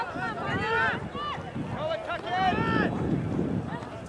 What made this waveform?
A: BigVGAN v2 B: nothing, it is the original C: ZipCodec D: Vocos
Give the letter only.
B